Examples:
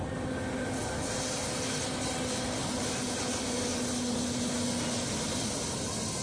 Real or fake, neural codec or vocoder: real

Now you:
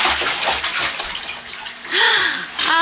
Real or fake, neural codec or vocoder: real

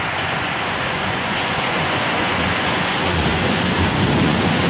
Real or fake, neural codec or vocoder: fake, vocoder, Vocos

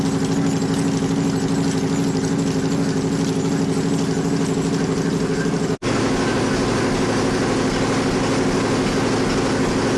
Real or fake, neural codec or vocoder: real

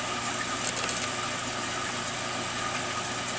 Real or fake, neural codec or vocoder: real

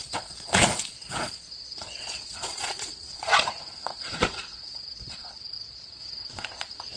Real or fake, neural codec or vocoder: fake, vocoder, Vocos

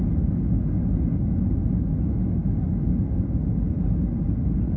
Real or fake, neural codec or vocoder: real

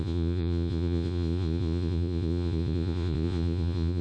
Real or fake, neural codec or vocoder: fake, vocoder, Vocos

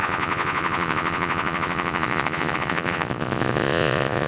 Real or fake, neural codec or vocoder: fake, vocoder, Vocos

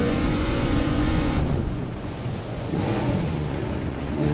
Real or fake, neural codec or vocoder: fake, vocoder, Vocos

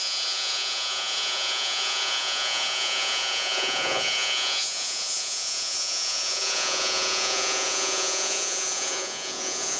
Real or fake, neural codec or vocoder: fake, vocoder, Vocos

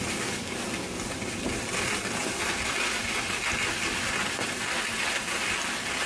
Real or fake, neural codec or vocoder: real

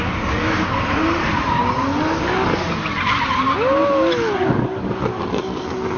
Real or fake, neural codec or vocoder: real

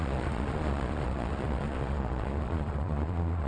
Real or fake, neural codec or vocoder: fake, vocoder, Vocos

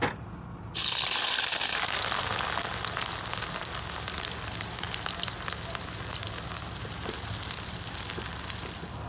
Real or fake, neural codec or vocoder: real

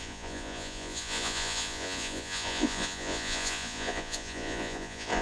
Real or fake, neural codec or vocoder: fake, vocoder, Vocos